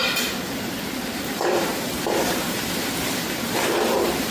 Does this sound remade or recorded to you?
remade